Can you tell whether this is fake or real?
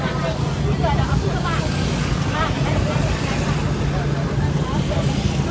real